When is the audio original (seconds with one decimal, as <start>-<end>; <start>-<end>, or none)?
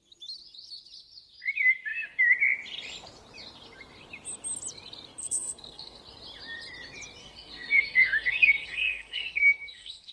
0.0-5.2; 6.0-7.2